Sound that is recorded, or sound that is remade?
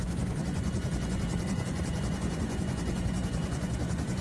remade